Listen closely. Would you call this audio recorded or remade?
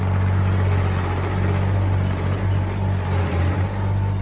recorded